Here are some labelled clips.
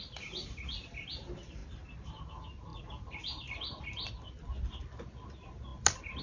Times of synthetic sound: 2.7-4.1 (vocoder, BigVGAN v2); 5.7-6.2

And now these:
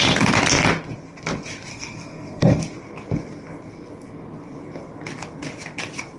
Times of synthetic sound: 1.7-2.6 (codec, SNAC)

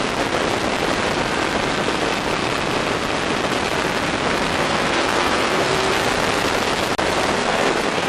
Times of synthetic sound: 4.5-5.9 (codec, SNAC); 7.4-8.1

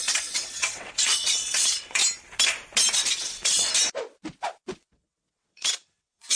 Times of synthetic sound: 0.0-2.0 (vocoder, WaveNeXt); 2.9-3.7; 4.8-6.4

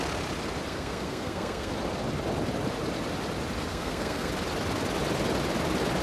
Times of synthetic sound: 0.7-1.7 (codec, SNAC); 3.7-4.3

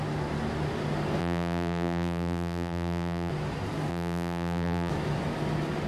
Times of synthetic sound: 1.2-3.3 (vocoder, BigVGAN v2); 3.9-4.9

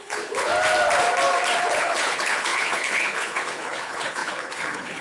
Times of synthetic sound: 0.0-0.5 (codec, HILCodec); 1.6-5.0

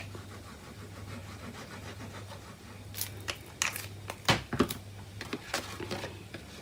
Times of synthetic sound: none